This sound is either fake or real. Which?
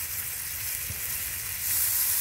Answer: real